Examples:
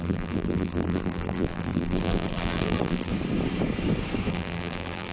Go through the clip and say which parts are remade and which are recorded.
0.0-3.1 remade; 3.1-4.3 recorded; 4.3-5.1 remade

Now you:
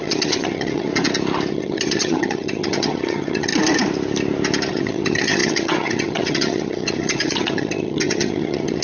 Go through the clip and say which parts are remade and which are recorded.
0.0-0.9 remade; 0.9-1.5 recorded; 1.5-3.5 remade; 3.5-4.7 recorded; 4.7-8.8 remade

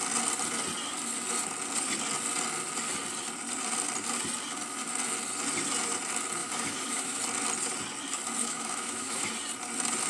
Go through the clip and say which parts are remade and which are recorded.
0.0-6.4 recorded; 6.4-7.2 remade; 7.2-8.4 recorded; 8.4-9.3 remade; 9.3-10.1 recorded

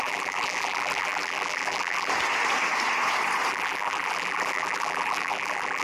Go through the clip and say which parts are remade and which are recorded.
0.0-2.1 remade; 2.1-3.5 recorded; 3.5-5.8 remade